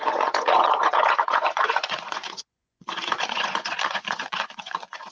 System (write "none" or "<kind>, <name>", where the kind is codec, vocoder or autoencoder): vocoder, Vocos